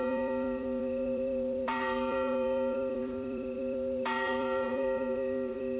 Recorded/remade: remade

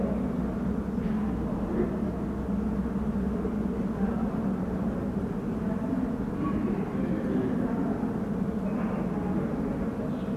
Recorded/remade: recorded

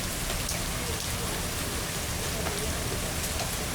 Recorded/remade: recorded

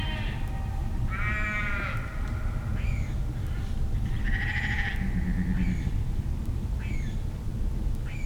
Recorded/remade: recorded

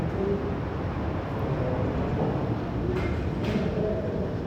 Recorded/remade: recorded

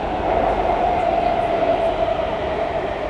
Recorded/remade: remade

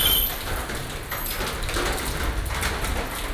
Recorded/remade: recorded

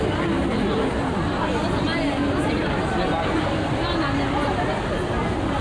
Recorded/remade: recorded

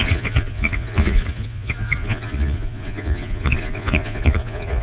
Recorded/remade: remade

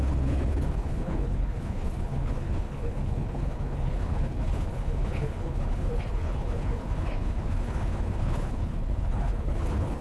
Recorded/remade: remade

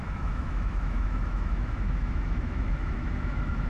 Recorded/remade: remade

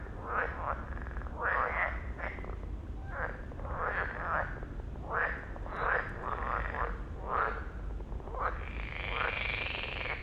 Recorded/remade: recorded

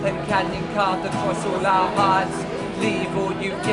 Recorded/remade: recorded